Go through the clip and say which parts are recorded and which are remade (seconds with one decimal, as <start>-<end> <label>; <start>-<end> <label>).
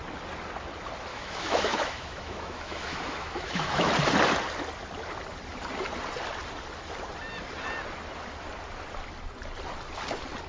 0.0-1.1 recorded; 1.1-3.9 remade; 3.9-10.5 recorded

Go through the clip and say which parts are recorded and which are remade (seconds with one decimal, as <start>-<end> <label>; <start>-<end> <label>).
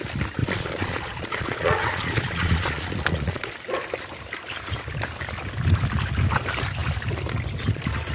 0.0-0.4 recorded; 0.4-3.5 remade; 3.5-8.1 recorded